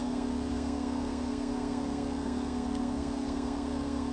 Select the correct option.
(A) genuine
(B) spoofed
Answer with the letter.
B